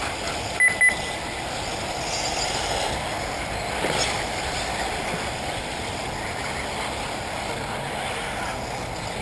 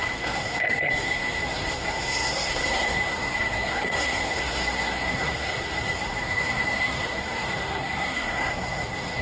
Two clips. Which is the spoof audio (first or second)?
second